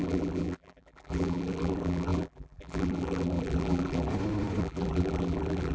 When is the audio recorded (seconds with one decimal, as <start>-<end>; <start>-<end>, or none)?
4.1-4.6